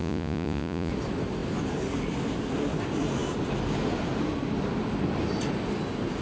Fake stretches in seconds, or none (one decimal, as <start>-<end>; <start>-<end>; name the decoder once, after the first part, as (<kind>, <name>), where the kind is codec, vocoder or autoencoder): 0.0-0.9 (vocoder, Vocos)